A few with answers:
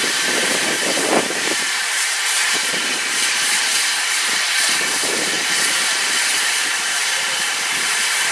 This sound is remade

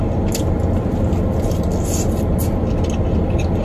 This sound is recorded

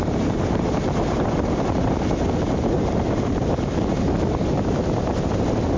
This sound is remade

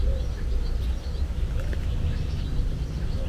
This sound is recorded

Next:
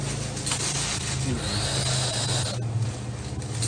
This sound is recorded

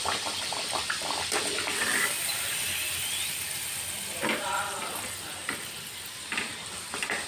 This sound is remade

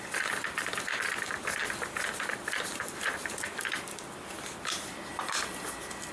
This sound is remade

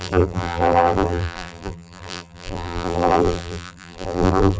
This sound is remade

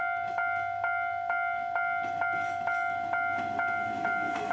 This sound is recorded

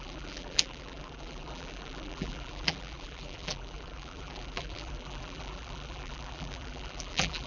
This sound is remade